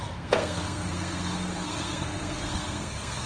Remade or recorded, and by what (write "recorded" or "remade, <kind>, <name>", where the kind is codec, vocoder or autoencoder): remade, codec, SNAC